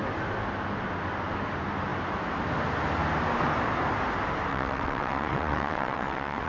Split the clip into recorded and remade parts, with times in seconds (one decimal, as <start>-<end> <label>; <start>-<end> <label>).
0.0-4.5 recorded; 4.5-6.5 remade